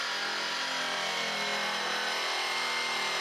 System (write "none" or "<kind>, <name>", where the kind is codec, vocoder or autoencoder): none